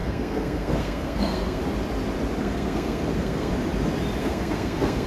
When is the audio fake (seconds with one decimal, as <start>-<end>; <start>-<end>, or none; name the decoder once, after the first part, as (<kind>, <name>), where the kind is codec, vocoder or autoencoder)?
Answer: 0.0-1.6 (codec, SNAC); 2.4-3.5; 4.2-5.1